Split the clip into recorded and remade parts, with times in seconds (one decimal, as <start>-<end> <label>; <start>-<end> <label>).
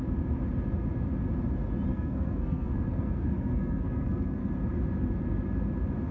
0.0-1.9 recorded; 1.9-4.5 remade; 4.5-6.1 recorded